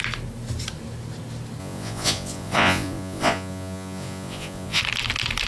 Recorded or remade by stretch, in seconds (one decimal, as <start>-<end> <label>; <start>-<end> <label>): 0.0-1.6 recorded; 1.6-4.8 remade; 4.8-5.5 recorded